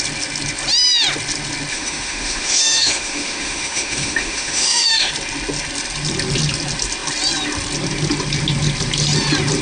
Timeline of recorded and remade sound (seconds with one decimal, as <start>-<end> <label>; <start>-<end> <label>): 0.0-1.7 recorded; 1.7-5.1 remade; 5.1-9.6 recorded